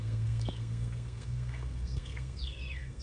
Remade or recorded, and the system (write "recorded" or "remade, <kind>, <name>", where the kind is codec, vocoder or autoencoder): remade, codec, SNAC